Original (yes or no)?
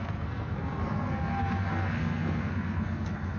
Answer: no